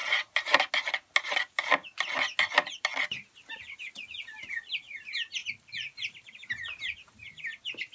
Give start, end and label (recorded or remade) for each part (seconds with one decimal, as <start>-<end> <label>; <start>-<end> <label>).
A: 0.0-0.7 remade; 0.7-5.4 recorded; 5.4-6.8 remade; 6.8-7.9 recorded